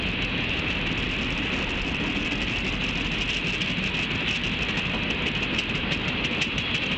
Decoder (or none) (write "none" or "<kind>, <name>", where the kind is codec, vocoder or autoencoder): none